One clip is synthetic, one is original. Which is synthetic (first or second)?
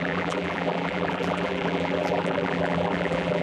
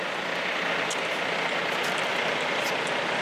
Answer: first